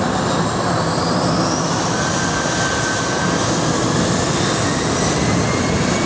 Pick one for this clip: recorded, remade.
recorded